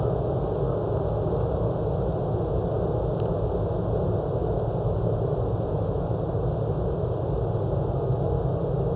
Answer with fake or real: real